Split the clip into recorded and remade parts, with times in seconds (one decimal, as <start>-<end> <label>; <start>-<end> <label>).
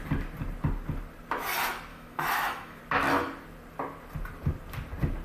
0.0-1.9 recorded; 1.9-2.8 remade; 2.8-5.2 recorded